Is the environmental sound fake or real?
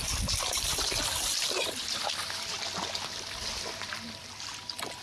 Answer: real